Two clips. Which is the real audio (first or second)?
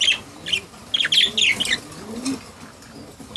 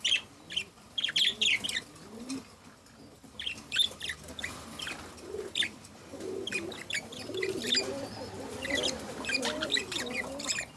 first